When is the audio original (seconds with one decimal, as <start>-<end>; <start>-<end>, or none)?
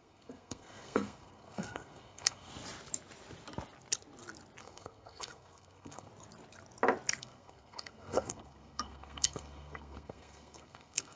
2.5-4.6; 6.1-7.2